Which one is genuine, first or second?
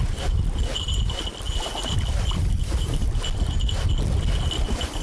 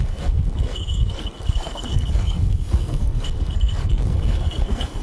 first